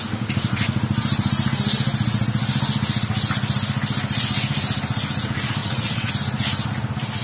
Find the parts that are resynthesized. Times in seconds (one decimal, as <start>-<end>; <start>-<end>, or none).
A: 5.6-6.1